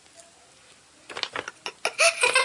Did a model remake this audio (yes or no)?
no